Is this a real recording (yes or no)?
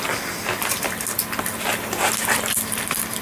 yes